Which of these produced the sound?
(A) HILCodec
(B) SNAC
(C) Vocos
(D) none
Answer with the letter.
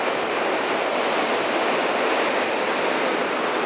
D